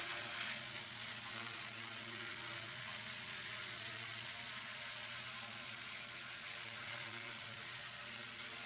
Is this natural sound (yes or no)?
no